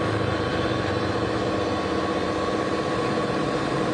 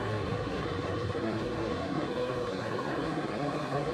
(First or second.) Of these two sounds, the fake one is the second